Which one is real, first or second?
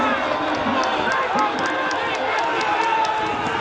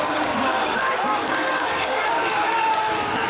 first